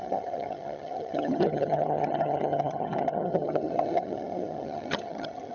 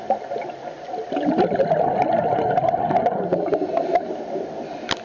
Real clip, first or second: second